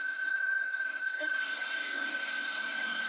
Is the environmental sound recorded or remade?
remade